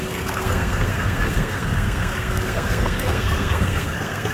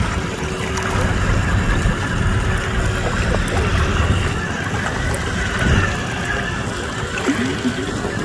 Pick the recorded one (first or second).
second